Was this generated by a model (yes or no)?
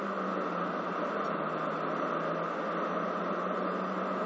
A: no